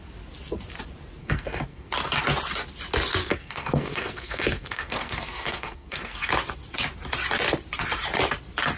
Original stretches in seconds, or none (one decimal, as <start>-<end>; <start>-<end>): 0.0-1.2; 1.9-3.2; 6.3-8.8